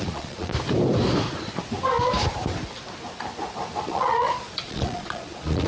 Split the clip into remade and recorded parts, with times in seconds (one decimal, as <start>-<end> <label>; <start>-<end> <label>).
0.0-0.5 remade; 0.5-3.8 recorded; 3.8-5.7 remade